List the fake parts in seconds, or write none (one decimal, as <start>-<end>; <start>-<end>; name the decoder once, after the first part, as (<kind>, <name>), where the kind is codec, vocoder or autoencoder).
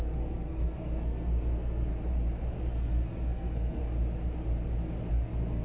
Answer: 0.0-1.9 (codec, SNAC); 2.7-3.8; 5.1-5.6